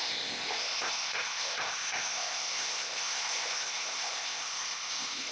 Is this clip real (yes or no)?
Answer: no